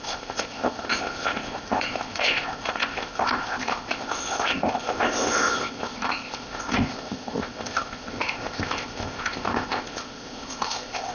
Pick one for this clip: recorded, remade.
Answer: remade